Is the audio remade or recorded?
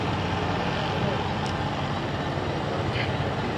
recorded